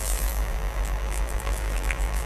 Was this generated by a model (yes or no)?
yes